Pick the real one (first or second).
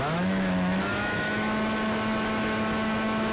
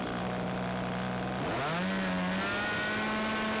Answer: second